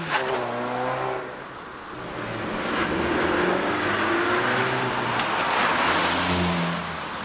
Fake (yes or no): no